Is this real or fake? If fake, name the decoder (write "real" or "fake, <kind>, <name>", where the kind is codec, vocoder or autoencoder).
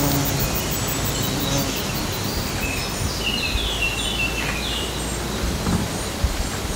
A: real